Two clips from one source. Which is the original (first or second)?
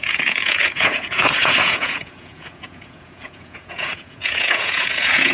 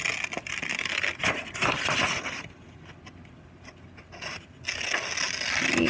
second